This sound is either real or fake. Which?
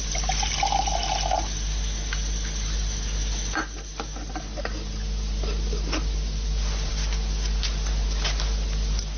real